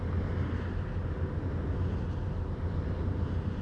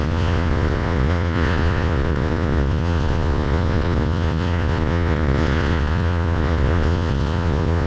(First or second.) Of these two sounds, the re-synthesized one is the second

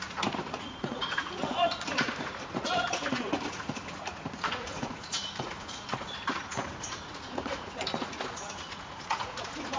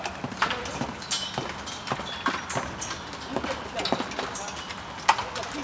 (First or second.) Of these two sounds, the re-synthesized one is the first